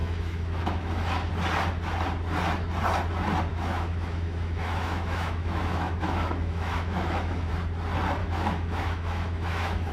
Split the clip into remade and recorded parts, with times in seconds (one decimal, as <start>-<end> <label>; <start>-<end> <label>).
0.0-1.3 remade; 1.3-3.5 recorded; 3.5-7.5 remade; 7.5-8.2 recorded; 8.2-9.9 remade